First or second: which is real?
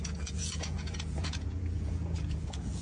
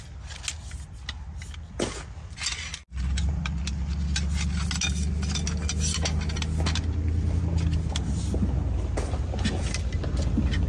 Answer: second